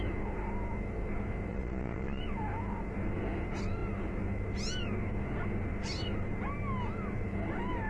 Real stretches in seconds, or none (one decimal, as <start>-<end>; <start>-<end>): 0.0-1.5; 2.2-7.9